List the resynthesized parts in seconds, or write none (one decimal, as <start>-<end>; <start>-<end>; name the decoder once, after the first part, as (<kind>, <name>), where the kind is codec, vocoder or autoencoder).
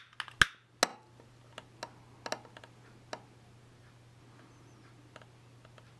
none